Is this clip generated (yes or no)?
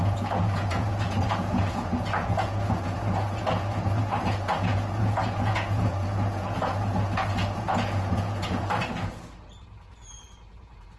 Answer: yes